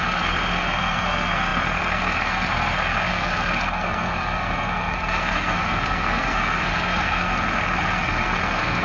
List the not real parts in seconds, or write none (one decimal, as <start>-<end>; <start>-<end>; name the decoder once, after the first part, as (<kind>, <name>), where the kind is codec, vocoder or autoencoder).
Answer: 0.0-8.8 (codec, SNAC)